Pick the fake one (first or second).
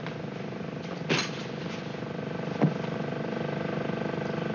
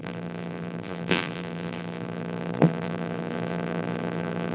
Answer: second